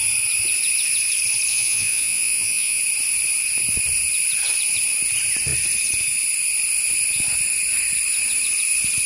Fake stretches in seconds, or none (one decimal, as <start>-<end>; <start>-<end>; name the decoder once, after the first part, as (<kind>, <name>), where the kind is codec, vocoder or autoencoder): 1.5-2.8 (vocoder, Vocos)